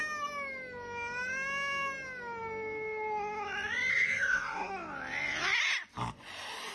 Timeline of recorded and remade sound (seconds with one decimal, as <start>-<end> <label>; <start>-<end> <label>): 0.0-3.9 recorded; 3.9-4.7 remade; 4.7-6.7 recorded